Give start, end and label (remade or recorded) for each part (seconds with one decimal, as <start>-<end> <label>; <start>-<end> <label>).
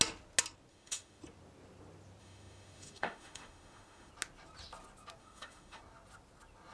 0.0-0.7 recorded; 0.7-1.2 remade; 1.2-2.2 recorded; 2.2-4.1 remade; 4.1-5.2 recorded; 5.2-5.8 remade; 5.8-6.7 recorded